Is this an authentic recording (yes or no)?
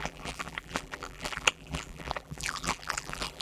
no